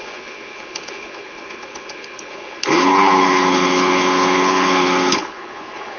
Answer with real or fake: fake